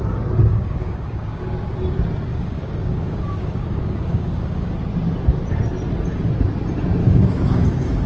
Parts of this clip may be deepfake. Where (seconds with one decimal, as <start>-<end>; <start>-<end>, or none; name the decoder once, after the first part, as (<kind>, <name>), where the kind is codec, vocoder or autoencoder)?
0.5-1.4 (codec, DAC); 2.3-4.7; 7.0-8.1